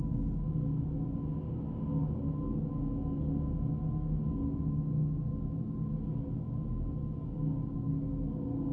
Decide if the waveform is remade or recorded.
recorded